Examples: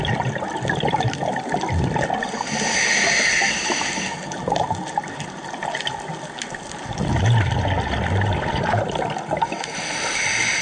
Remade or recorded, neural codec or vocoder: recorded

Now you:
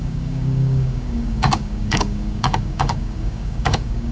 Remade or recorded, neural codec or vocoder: remade, codec, DAC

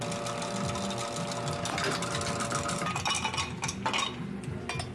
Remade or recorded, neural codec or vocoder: recorded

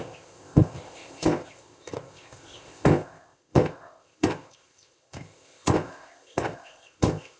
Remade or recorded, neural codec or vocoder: remade, codec, ZipCodec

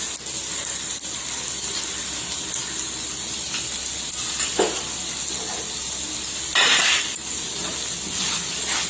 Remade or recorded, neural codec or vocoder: recorded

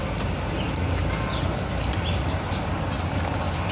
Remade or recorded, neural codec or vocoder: recorded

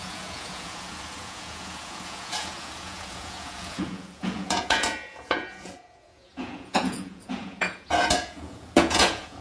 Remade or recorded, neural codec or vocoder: remade, vocoder, Vocos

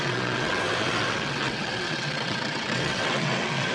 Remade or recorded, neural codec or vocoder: remade, vocoder, WaveNeXt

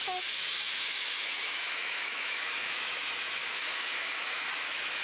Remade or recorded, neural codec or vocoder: remade, autoencoder, DAC-VAE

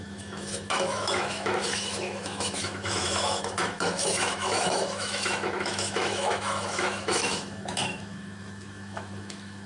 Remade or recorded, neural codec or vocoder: remade, autoencoder, DAC-VAE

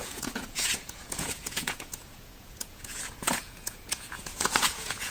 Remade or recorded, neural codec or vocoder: remade, vocoder, Vocos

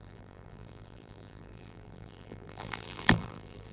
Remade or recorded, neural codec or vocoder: remade, vocoder, BigVGAN v2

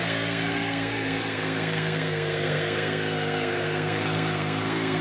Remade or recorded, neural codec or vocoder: remade, codec, SNAC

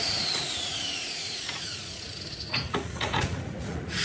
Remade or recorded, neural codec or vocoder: remade, vocoder, Vocos